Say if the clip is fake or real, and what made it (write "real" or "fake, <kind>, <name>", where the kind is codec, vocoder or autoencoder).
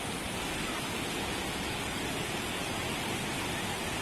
real